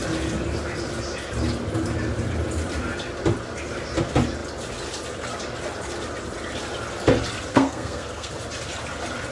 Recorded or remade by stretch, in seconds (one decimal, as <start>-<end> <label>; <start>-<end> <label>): 0.0-7.5 recorded; 7.5-8.3 remade; 8.3-9.3 recorded